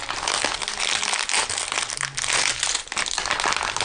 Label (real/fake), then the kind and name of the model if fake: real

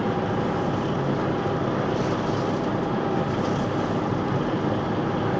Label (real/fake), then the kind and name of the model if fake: real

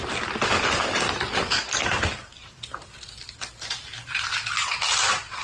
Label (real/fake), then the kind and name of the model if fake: real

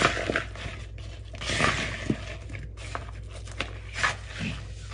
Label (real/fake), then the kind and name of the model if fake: real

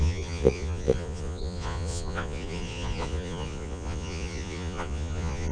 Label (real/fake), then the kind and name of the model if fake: fake, vocoder, Vocos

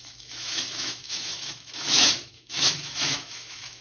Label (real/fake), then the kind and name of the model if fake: fake, autoencoder, DAC-VAE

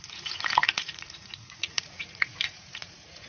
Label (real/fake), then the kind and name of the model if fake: fake, vocoder, Vocos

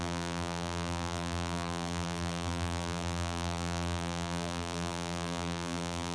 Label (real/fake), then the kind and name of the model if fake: fake, vocoder, BigVGAN v2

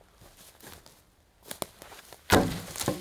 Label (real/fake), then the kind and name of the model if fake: real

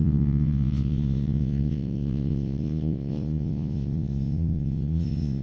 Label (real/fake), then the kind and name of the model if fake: fake, vocoder, Vocos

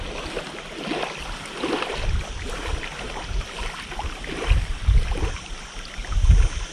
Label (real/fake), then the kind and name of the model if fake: real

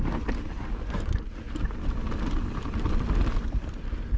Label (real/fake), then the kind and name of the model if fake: real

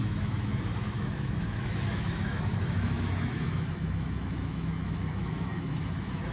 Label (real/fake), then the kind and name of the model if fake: fake, autoencoder, DAC-VAE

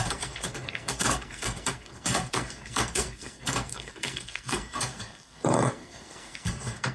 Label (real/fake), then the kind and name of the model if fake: fake, codec, SNAC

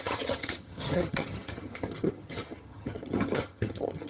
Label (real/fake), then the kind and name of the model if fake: fake, vocoder, HiFi-GAN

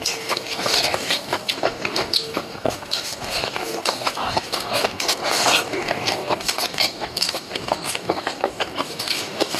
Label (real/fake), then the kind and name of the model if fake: fake, codec, DAC